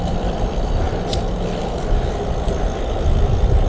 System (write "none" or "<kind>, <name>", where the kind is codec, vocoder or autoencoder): none